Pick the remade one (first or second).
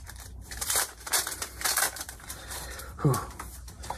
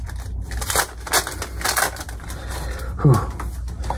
first